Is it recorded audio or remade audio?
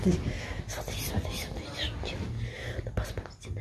recorded